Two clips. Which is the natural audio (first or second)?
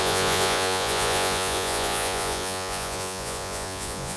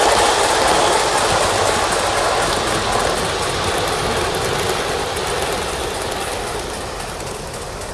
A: second